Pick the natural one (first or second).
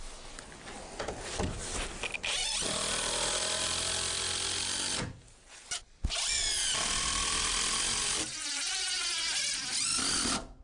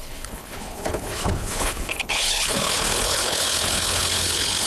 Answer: first